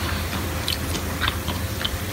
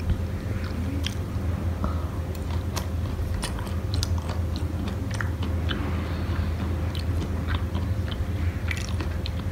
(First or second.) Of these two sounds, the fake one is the first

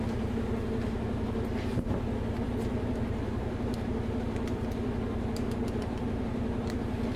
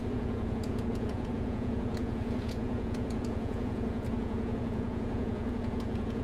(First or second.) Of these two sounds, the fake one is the second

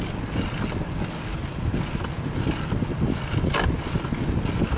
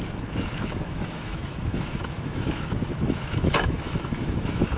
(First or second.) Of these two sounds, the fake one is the second